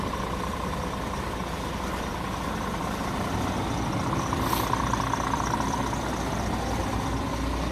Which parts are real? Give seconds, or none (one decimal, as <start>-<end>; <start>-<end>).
0.0-7.7